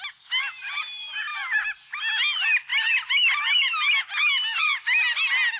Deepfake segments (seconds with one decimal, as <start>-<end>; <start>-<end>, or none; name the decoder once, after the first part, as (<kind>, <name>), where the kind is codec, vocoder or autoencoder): none